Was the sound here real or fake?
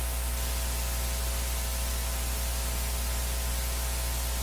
real